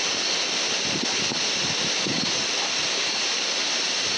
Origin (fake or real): real